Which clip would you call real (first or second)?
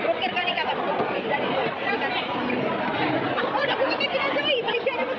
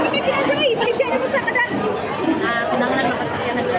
second